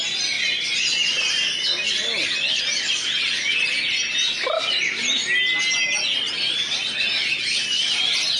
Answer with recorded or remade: recorded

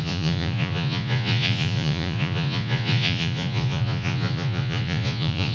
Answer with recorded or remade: remade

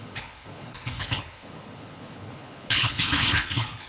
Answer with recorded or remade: remade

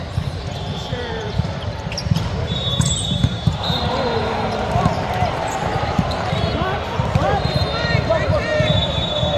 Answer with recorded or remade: remade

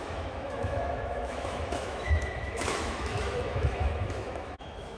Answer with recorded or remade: remade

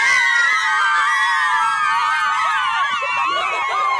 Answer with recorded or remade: recorded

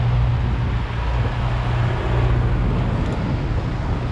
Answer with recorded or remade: recorded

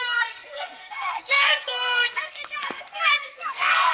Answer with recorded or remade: remade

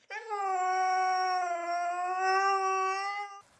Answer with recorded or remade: recorded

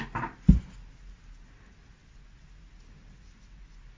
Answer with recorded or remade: recorded